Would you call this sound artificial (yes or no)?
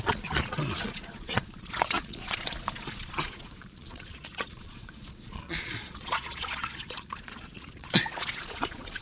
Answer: yes